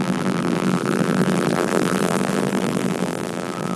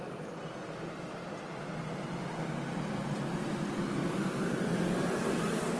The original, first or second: second